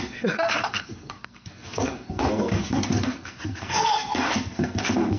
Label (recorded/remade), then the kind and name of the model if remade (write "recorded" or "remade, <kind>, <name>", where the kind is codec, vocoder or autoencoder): remade, codec, SNAC